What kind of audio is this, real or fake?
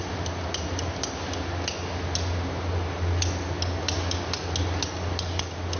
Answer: real